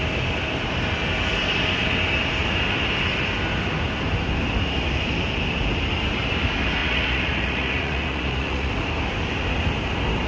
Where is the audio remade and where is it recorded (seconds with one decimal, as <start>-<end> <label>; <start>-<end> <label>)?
0.0-6.8 recorded; 6.8-8.7 remade; 8.7-10.3 recorded

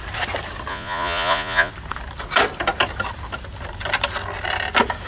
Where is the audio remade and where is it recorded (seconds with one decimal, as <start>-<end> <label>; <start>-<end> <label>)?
0.0-0.7 recorded; 0.7-1.7 remade; 1.7-5.1 recorded

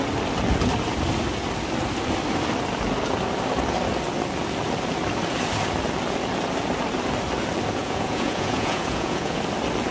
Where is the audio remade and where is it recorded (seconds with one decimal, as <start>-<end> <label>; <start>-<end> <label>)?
0.0-7.8 recorded; 7.8-9.4 remade; 9.4-9.9 recorded

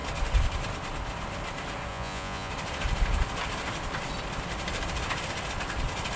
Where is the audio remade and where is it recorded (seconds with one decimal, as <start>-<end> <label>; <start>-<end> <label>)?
0.0-1.9 recorded; 1.9-2.5 remade; 2.5-6.2 recorded

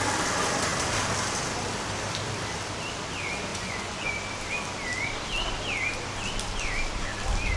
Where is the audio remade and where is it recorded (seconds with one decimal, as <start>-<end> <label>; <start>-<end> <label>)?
0.0-3.5 recorded; 3.5-4.1 remade; 4.1-7.6 recorded

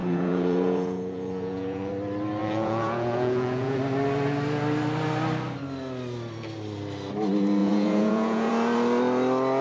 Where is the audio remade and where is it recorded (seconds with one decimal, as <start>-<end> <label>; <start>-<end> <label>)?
0.0-1.9 remade; 1.9-2.4 recorded; 2.4-3.8 remade; 3.8-7.6 recorded; 7.6-8.5 remade; 8.5-9.6 recorded